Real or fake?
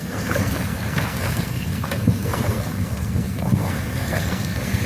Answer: fake